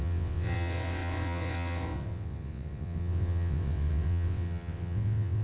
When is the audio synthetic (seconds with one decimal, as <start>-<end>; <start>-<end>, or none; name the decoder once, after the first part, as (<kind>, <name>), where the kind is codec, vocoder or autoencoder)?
0.0-5.4 (vocoder, WaveNeXt)